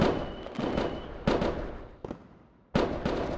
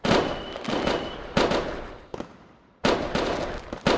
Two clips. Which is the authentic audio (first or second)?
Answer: first